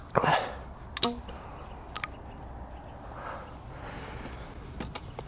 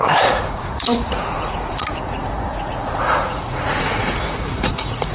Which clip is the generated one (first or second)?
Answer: second